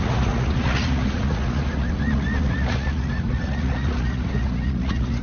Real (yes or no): no